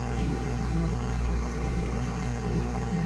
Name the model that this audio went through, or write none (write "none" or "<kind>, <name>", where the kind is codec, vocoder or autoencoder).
codec, SNAC